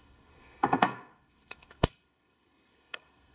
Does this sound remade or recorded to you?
remade